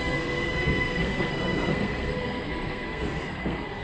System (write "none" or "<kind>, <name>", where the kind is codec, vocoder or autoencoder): codec, SNAC